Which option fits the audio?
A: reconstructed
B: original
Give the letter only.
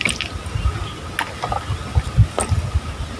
B